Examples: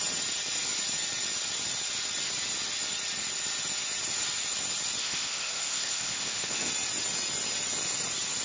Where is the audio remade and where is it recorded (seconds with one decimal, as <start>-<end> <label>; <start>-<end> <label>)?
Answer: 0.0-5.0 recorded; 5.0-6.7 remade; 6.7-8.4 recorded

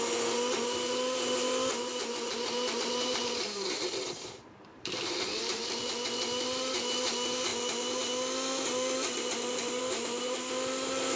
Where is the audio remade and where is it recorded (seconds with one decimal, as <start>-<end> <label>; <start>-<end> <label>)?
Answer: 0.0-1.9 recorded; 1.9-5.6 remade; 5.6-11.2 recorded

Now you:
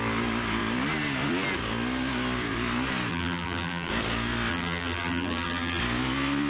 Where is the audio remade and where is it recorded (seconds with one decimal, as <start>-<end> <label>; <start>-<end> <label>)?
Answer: 0.0-3.1 recorded; 3.1-3.9 remade; 3.9-4.5 recorded; 4.5-5.8 remade; 5.8-6.5 recorded

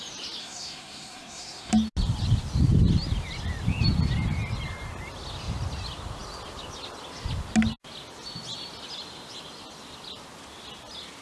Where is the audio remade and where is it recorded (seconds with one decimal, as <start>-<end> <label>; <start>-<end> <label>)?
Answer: 0.0-0.4 recorded; 0.4-1.7 remade; 1.7-11.2 recorded

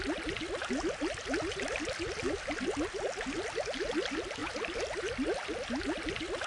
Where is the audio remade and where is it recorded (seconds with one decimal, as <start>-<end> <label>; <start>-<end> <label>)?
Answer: 0.0-1.2 recorded; 1.2-2.4 remade; 2.4-4.4 recorded; 4.4-5.0 remade; 5.0-6.5 recorded

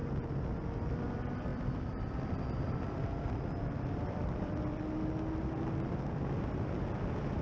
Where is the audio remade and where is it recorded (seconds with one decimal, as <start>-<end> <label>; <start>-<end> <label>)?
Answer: 0.0-1.5 recorded; 1.5-4.8 remade; 4.8-7.4 recorded

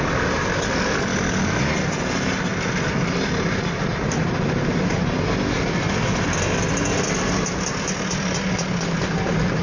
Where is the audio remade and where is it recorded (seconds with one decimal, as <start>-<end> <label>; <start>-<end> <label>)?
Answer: 0.0-9.6 recorded

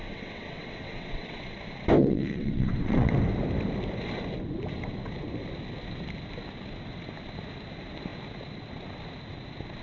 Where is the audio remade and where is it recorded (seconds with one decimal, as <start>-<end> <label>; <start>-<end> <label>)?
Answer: 0.0-1.4 remade; 1.4-2.0 recorded; 2.0-3.1 remade; 3.1-9.8 recorded